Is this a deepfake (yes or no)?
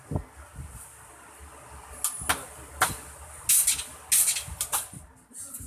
no